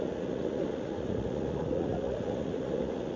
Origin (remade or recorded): remade